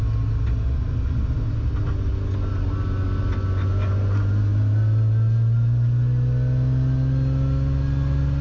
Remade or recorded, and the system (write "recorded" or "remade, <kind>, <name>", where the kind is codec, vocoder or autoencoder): recorded